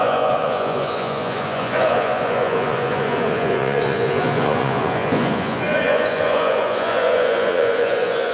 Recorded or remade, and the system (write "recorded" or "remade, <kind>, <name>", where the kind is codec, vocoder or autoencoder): remade, vocoder, Vocos